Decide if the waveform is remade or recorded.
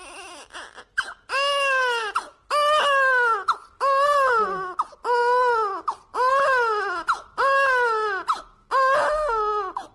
recorded